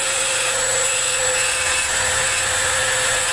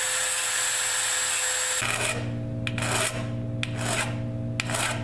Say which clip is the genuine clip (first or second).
second